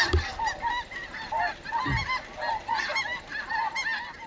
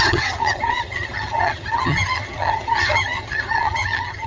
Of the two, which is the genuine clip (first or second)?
first